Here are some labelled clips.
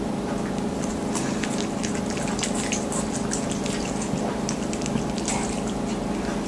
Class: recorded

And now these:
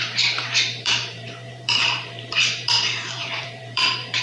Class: remade